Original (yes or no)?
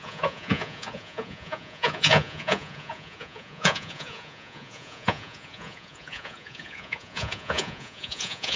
no